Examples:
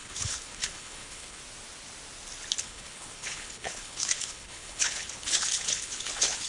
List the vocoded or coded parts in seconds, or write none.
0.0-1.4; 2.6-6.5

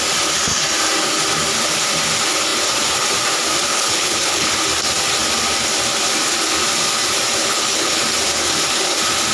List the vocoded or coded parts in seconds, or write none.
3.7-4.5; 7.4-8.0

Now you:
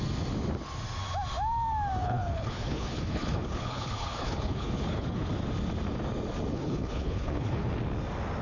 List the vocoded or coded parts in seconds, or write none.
2.0-5.3; 6.5-7.7

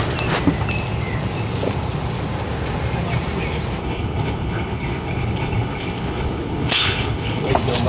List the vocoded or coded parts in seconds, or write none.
3.8-7.5

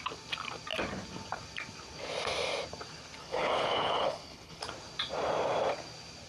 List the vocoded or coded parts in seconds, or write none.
3.2-4.6